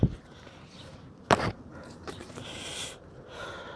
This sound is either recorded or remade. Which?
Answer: recorded